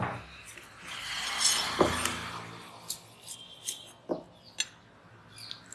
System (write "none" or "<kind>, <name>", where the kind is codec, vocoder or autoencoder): none